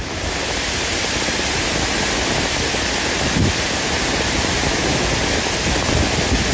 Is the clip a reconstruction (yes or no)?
no